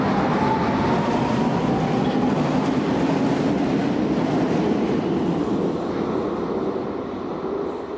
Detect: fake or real real